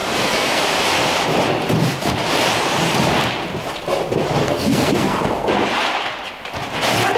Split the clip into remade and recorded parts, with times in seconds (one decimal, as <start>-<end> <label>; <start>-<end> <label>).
0.0-0.6 remade; 0.6-4.4 recorded; 4.4-5.5 remade; 5.5-7.2 recorded